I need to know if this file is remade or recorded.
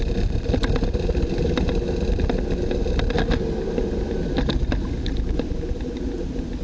recorded